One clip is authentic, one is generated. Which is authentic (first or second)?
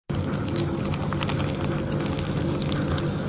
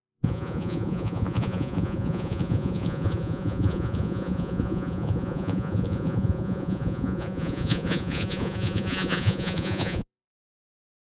first